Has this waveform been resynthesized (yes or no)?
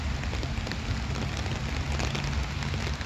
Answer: no